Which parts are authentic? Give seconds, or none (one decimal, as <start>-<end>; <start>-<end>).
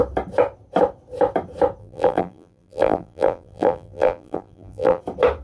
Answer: 0.0-1.8; 5.0-5.4